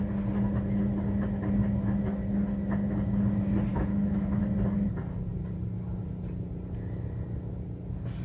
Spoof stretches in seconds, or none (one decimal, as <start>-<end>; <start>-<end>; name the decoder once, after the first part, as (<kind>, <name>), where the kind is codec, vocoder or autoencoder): 3.7-4.4 (autoencoder, DAC-VAE)